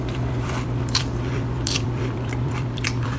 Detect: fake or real fake